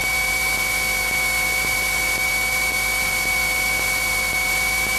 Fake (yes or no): no